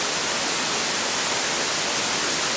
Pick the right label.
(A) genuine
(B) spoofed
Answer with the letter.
A